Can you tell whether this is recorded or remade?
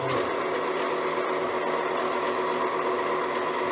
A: recorded